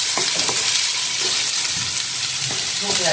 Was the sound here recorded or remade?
recorded